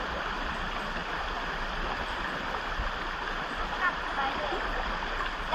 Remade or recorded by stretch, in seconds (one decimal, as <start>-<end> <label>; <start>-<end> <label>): 0.0-5.5 recorded